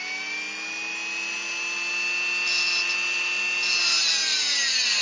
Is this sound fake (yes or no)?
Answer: no